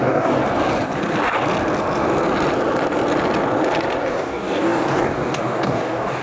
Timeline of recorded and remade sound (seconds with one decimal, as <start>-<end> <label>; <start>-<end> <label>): 0.0-0.4 remade; 0.4-4.1 recorded; 4.1-6.2 remade